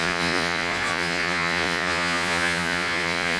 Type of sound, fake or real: fake